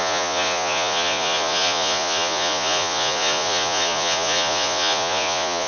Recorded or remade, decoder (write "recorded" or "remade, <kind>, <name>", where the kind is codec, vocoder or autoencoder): remade, vocoder, Vocos